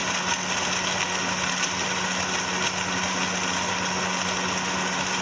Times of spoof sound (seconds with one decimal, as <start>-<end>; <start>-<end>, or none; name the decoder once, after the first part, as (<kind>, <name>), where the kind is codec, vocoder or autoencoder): none